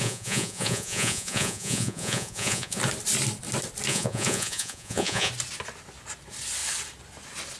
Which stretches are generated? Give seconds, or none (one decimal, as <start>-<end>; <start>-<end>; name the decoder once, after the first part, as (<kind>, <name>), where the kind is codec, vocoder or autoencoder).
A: 0.0-2.8 (vocoder, Vocos); 3.9-5.3